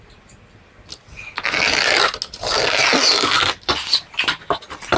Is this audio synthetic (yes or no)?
no